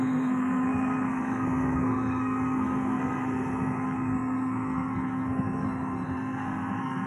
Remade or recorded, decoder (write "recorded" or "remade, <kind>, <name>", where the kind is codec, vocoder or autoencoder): remade, codec, SNAC